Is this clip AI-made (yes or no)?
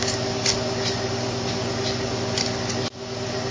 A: no